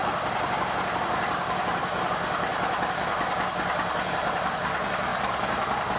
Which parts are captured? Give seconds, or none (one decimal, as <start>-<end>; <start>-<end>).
0.0-0.7; 2.5-4.1